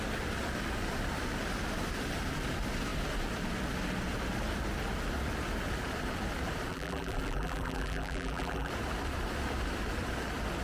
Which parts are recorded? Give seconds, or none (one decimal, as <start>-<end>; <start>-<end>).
0.0-6.7; 8.7-10.6